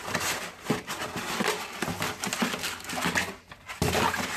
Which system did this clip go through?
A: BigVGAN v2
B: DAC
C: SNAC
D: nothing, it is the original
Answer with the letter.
D